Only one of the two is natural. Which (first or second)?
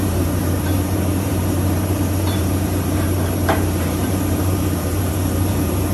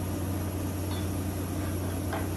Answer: second